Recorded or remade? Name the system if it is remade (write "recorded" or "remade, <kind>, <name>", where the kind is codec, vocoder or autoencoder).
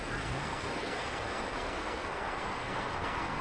remade, codec, SNAC